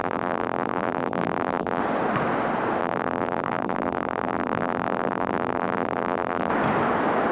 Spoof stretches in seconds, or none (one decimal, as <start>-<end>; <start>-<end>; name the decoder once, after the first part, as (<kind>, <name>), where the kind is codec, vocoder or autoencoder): 0.0-1.8 (vocoder, BigVGAN v2); 2.8-6.5